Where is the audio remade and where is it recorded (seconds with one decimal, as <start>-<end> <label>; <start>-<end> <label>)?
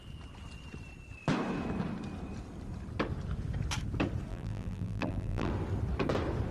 0.0-4.3 recorded; 4.3-5.5 remade; 5.5-6.5 recorded